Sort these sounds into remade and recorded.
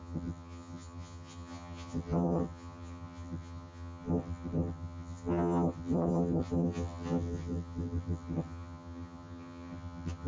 remade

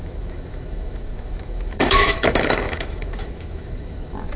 remade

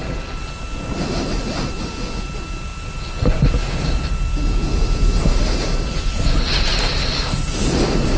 recorded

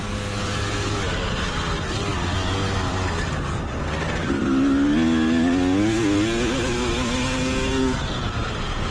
recorded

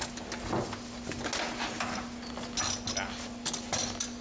recorded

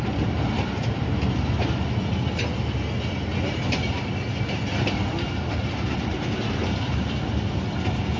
recorded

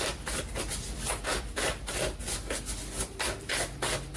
recorded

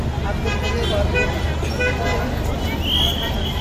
recorded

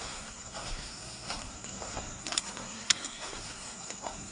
remade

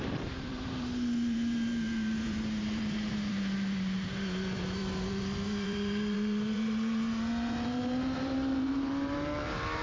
remade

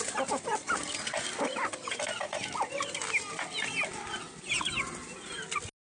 recorded